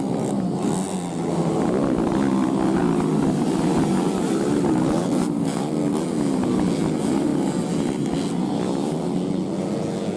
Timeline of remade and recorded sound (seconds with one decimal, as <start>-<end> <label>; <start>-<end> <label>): 0.0-10.2 recorded